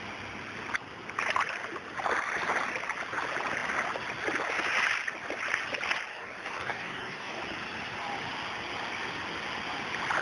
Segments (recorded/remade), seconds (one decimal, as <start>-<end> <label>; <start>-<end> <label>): 0.0-6.1 recorded; 6.1-7.4 remade; 7.4-10.2 recorded

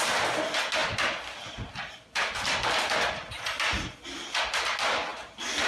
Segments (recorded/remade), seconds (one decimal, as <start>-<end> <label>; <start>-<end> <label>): 0.0-0.8 recorded; 0.8-3.3 remade; 3.3-5.7 recorded